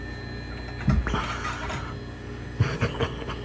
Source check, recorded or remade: recorded